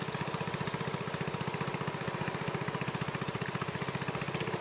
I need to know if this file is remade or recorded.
recorded